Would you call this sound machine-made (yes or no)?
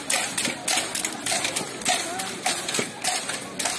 no